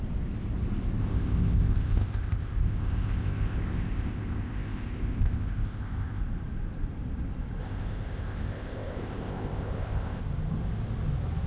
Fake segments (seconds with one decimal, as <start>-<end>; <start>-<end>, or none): 1.0-6.2; 7.6-10.2